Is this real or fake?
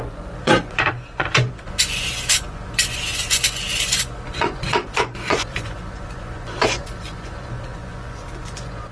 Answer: fake